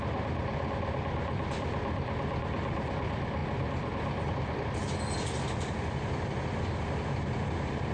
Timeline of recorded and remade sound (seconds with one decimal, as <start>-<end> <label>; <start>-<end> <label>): 0.0-7.9 recorded